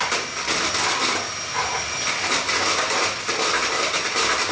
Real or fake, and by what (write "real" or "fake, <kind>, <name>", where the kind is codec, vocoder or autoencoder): real